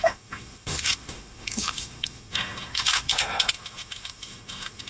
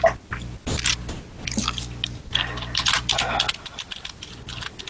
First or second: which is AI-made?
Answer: first